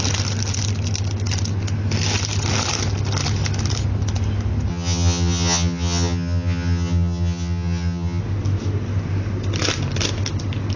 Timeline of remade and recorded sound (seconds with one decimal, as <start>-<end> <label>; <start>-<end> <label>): 0.0-4.7 recorded; 4.7-8.2 remade; 8.2-10.8 recorded